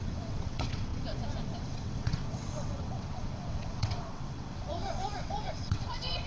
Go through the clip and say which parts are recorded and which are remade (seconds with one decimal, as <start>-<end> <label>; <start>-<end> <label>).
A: 0.0-6.3 remade